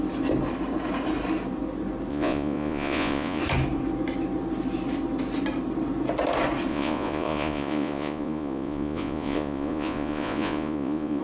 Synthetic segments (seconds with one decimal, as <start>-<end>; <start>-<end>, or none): 2.1-3.4; 6.7-11.2